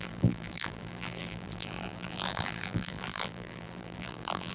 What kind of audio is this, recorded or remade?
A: remade